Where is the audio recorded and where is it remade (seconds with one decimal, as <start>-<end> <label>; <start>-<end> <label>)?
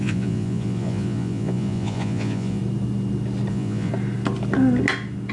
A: 0.0-2.6 remade; 2.6-3.5 recorded; 3.5-3.9 remade; 3.9-5.3 recorded